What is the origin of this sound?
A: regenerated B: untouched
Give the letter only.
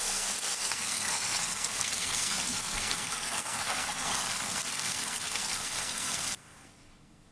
A